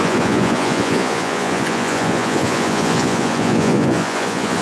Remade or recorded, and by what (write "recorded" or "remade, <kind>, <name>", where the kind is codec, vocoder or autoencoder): remade, vocoder, Vocos